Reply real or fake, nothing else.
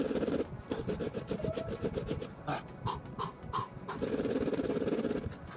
real